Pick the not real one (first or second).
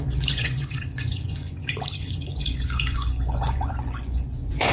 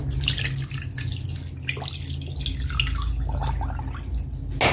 first